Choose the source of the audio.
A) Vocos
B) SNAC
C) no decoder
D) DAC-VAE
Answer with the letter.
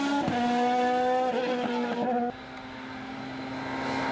C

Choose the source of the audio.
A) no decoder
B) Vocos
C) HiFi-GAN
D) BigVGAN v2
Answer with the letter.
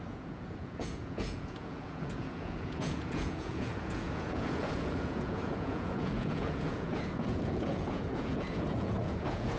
B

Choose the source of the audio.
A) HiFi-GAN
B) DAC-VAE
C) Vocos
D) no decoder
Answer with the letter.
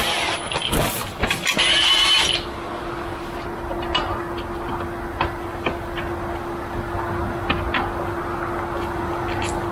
D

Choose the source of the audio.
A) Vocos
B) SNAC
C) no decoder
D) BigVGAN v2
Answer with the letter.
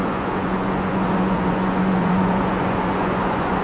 A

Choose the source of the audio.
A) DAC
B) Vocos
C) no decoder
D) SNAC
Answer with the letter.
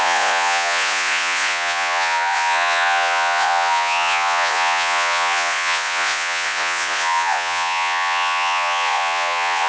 B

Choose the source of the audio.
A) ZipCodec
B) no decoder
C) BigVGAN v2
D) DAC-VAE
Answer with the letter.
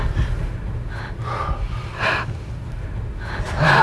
B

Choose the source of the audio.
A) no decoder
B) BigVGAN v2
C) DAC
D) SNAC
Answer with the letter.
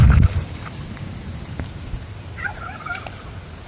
B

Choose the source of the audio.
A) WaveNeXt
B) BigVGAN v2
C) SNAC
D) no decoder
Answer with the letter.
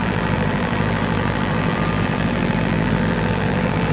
B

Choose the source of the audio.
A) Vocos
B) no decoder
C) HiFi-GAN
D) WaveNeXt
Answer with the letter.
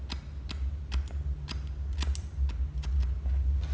B